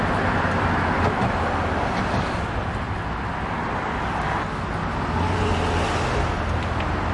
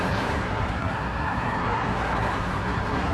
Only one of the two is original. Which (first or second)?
first